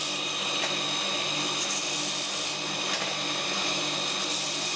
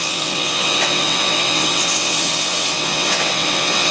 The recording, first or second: first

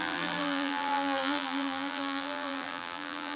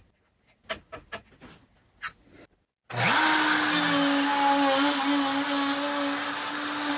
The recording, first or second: second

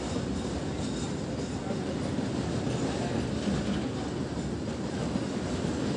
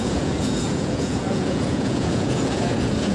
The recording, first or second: first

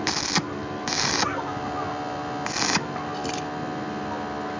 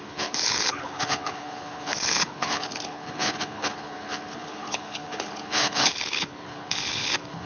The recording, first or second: first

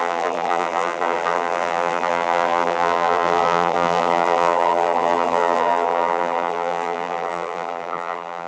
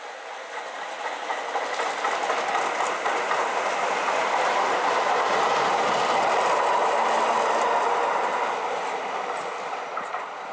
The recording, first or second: second